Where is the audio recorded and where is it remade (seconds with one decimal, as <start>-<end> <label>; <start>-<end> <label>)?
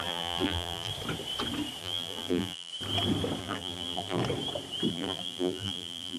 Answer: 0.0-0.9 remade; 0.9-1.8 recorded; 1.8-2.7 remade; 2.7-3.4 recorded; 3.4-4.2 remade; 4.2-4.9 recorded; 4.9-6.2 remade